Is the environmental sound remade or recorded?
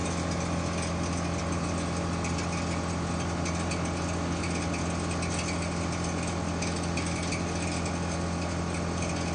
recorded